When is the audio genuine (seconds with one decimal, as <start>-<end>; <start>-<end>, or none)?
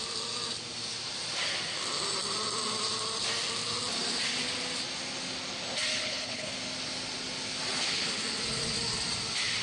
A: 0.0-6.0; 6.5-9.6